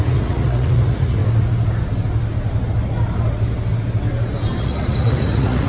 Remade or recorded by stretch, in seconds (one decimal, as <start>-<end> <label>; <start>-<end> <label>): 0.0-1.2 remade; 1.2-4.6 recorded; 4.6-5.7 remade